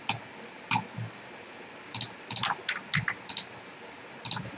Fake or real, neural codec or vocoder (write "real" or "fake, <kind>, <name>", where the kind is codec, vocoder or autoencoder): real